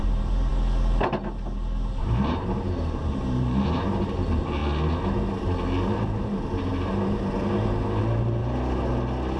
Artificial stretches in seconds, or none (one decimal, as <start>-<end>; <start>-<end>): 0.0-0.5; 2.0-4.6; 5.9-8.4